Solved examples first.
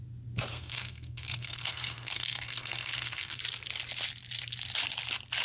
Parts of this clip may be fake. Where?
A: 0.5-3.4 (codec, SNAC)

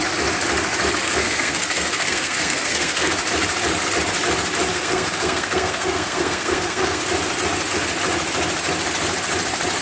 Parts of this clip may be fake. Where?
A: 1.0-3.1 (codec, SNAC); 4.7-7.0

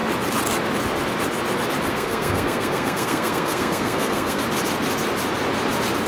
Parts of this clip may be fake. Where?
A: 1.9-4.4 (codec, SNAC)